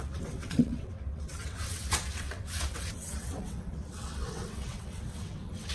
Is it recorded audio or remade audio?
remade